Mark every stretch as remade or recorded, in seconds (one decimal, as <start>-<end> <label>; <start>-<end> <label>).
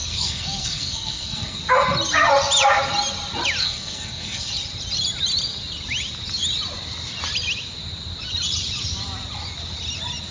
0.0-1.6 remade; 1.6-3.6 recorded; 3.6-4.5 remade; 4.5-10.3 recorded